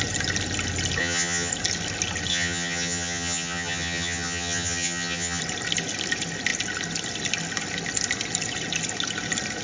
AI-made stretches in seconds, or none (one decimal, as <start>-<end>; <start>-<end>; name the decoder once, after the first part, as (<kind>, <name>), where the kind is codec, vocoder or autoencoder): 1.0-1.5 (vocoder, HiFi-GAN); 2.3-5.4